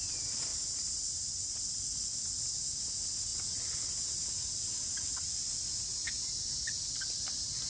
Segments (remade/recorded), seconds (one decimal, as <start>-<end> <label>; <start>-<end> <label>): 0.0-7.7 recorded